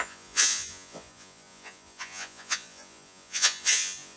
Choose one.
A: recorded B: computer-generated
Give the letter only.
B